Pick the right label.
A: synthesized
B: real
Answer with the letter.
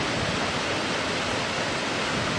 B